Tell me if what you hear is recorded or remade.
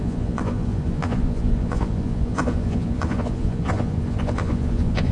remade